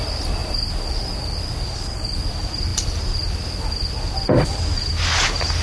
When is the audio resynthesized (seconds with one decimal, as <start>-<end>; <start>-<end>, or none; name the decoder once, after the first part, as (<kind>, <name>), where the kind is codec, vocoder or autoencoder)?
none